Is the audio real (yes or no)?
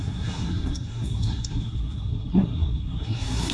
no